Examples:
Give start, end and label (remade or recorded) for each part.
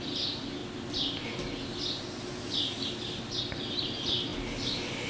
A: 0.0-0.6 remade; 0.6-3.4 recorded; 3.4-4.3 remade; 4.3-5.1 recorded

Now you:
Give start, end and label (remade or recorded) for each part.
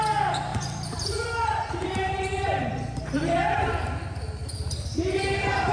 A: 0.0-0.5 recorded; 0.5-3.9 remade; 3.9-4.4 recorded; 4.4-5.2 remade; 5.2-5.7 recorded